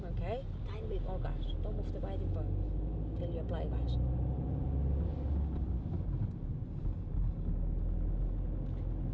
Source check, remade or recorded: recorded